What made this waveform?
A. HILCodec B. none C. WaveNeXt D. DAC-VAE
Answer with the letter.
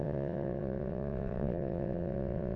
C